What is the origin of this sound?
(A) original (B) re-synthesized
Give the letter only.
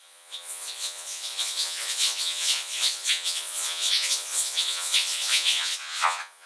B